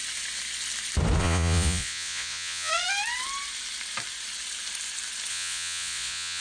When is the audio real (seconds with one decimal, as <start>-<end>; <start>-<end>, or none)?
0.0-1.2; 2.7-5.3